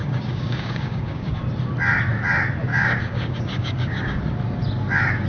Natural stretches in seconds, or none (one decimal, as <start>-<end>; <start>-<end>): 1.4-2.7; 4.2-5.3